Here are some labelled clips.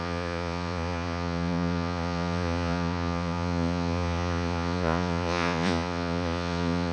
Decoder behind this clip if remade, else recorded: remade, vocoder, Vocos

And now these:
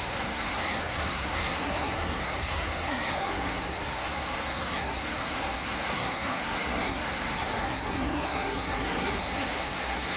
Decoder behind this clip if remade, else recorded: remade, codec, SNAC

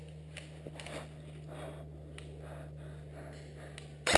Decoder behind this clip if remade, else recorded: recorded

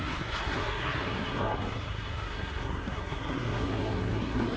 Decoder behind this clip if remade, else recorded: remade, codec, SNAC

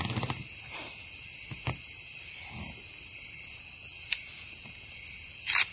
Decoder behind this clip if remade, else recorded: recorded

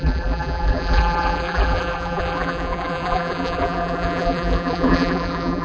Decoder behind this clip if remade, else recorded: remade, vocoder, BigVGAN v2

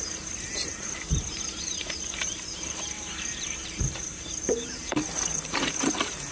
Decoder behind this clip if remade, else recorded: remade, vocoder, BigVGAN v2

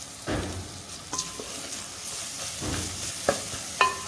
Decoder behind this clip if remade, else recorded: recorded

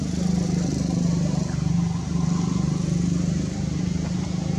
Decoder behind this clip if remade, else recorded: recorded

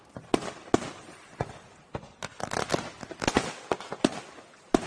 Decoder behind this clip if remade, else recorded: recorded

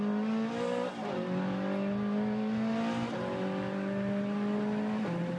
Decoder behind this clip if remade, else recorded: recorded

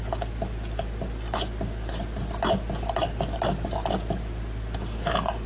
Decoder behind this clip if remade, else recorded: recorded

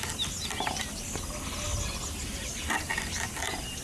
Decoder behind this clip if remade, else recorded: recorded